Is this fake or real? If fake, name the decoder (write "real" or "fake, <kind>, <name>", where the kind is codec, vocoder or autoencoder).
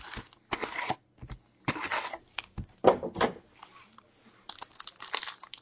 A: real